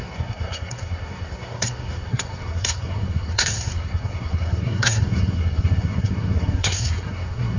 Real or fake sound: fake